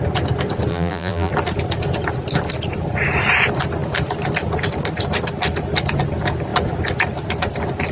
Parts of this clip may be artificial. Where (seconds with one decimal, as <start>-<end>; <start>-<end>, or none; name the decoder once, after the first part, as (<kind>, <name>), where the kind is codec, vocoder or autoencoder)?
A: 0.7-1.3 (vocoder, BigVGAN v2)